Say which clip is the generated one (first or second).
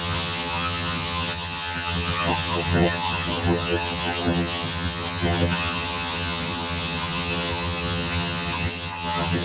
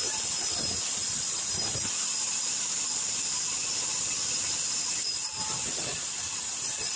first